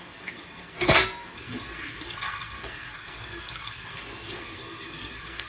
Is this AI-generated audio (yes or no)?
yes